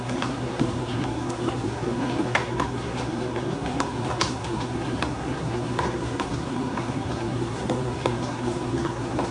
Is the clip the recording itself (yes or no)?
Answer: no